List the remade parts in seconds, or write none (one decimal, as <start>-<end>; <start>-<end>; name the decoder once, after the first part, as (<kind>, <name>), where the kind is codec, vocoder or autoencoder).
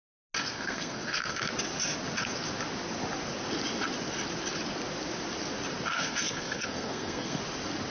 0.4-1.4 (codec, SNAC); 5.9-7.4